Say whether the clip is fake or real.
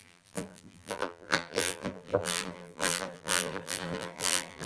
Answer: fake